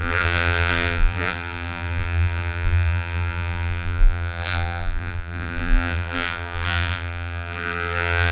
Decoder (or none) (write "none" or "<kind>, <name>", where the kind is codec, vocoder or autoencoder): vocoder, BigVGAN v2